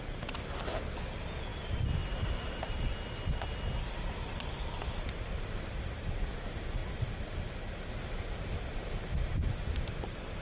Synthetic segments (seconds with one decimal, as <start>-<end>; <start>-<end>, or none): none